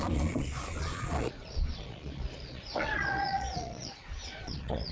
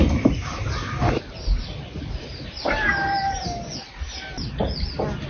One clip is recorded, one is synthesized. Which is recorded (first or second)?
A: second